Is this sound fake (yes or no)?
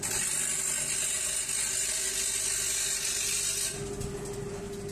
no